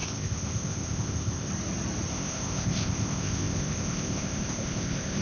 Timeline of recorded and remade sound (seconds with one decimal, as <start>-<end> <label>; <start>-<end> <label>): 0.0-1.5 remade; 1.5-2.1 recorded; 2.1-5.2 remade